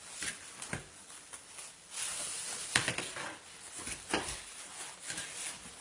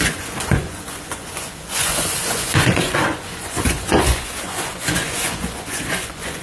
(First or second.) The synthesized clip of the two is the second